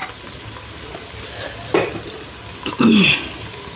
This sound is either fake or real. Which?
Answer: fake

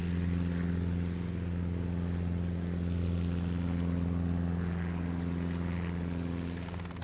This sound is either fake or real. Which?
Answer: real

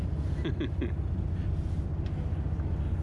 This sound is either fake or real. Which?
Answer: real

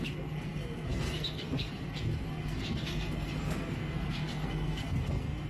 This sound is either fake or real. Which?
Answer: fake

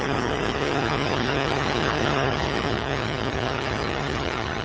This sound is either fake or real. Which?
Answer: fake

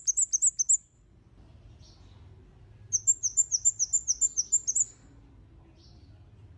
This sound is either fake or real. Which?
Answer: real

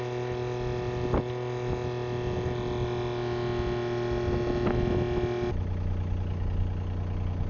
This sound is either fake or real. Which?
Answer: real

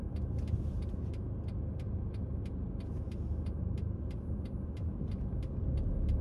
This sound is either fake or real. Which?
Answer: real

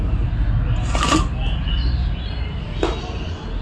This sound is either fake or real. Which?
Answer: real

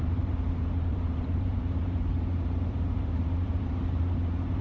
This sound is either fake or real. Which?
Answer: fake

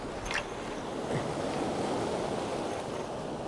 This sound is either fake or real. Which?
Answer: real